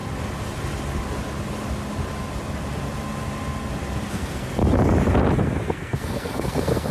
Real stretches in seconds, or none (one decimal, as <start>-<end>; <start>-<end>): 0.0-4.1; 4.6-5.4